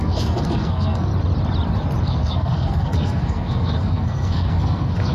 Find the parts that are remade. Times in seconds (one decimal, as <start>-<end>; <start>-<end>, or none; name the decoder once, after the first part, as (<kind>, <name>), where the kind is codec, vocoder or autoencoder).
0.0-1.1 (codec, SNAC); 2.0-5.1